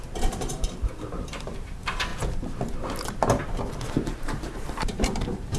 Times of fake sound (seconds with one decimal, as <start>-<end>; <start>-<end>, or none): 0.0-2.1; 3.7-5.6